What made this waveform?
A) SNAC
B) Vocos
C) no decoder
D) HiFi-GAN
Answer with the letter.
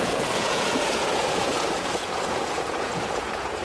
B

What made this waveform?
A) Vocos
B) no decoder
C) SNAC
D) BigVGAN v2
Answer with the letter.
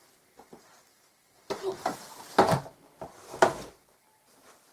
B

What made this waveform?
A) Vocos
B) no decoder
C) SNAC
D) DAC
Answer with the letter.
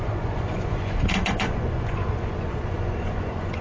A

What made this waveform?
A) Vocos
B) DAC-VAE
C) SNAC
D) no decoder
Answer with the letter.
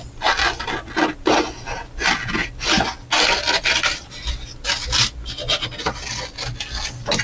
D